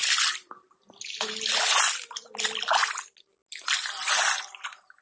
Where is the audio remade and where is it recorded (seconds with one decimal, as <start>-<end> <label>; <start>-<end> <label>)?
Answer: 0.0-5.0 recorded